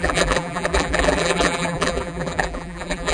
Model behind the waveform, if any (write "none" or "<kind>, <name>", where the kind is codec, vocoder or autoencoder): vocoder, BigVGAN v2